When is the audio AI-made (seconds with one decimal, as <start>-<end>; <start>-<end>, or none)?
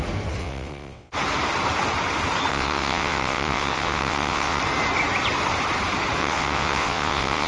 0.4-1.1; 2.5-4.6; 6.2-7.5